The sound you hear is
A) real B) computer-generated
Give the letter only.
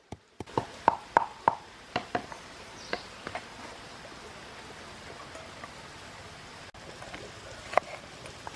A